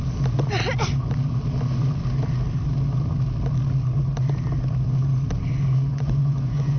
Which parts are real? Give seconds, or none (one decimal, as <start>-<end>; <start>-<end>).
0.0-5.9